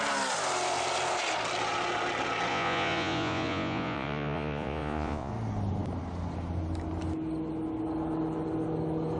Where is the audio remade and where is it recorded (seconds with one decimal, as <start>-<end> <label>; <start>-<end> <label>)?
0.0-2.5 recorded; 2.5-5.3 remade; 5.3-9.2 recorded

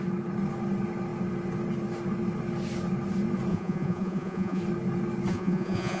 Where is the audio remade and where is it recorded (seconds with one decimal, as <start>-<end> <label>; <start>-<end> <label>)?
0.0-3.5 recorded; 3.5-4.6 remade; 4.6-5.3 recorded; 5.3-6.0 remade

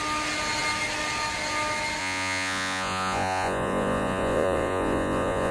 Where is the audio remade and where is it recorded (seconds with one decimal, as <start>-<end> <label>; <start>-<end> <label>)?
0.0-2.0 recorded; 2.0-5.5 remade

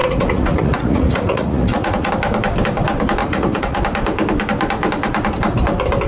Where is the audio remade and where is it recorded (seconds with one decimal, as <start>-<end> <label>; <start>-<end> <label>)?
0.0-2.1 remade; 2.1-3.2 recorded; 3.2-3.8 remade; 3.8-6.1 recorded

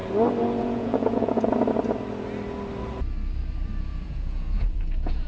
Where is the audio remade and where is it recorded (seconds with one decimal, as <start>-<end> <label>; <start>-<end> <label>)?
0.0-0.6 recorded; 0.6-1.5 remade; 1.5-3.8 recorded; 3.8-5.3 remade

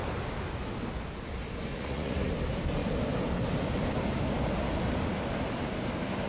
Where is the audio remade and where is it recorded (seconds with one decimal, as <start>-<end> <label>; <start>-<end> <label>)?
0.0-1.7 recorded; 1.7-2.3 remade; 2.3-6.3 recorded

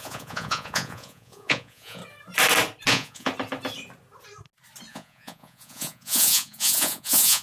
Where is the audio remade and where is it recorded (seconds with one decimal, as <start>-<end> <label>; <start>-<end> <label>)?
0.0-2.0 remade; 2.0-2.9 recorded; 2.9-3.3 remade; 3.3-4.9 recorded; 4.9-7.4 remade

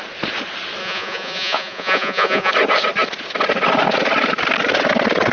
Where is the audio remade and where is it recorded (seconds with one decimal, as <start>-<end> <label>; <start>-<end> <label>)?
0.0-0.8 recorded; 0.8-2.5 remade; 2.5-5.3 recorded